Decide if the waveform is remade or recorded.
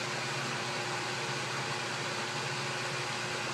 recorded